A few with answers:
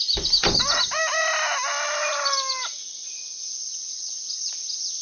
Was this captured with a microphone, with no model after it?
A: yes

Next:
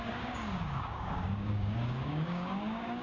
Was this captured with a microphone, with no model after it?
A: no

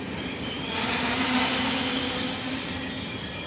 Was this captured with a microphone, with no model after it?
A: yes